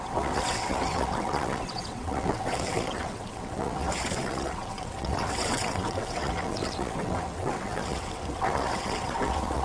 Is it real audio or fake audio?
fake